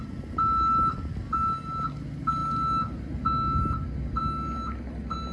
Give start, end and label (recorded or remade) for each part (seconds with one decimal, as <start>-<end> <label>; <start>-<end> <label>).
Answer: 0.0-5.3 recorded